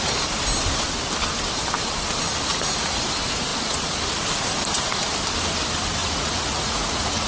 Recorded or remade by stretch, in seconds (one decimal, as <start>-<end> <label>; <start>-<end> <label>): 0.0-2.5 recorded; 2.5-3.0 remade; 3.0-6.0 recorded; 6.0-7.3 remade